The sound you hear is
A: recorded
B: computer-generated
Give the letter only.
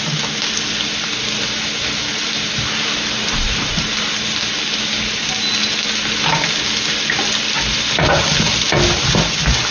A